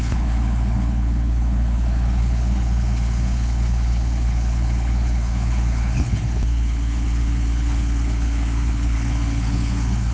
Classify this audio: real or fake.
fake